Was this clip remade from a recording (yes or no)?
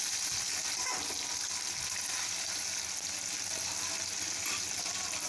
no